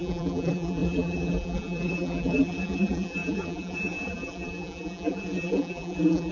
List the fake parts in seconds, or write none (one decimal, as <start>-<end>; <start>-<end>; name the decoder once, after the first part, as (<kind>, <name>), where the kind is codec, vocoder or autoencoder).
0.0-6.3 (vocoder, BigVGAN v2)